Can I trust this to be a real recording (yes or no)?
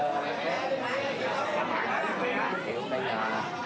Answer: yes